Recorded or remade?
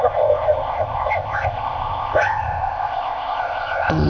remade